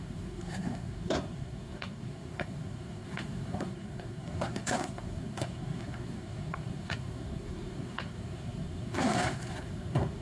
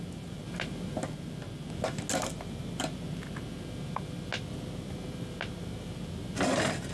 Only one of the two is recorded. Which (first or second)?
second